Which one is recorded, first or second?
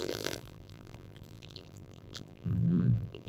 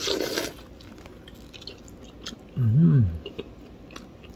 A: second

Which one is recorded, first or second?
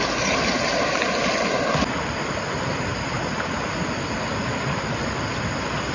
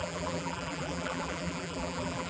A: first